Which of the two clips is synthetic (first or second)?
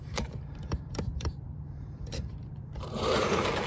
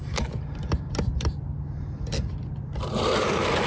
first